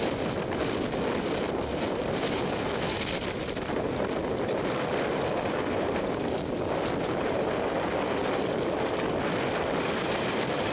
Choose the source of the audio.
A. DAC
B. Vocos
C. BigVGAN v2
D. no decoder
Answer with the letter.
C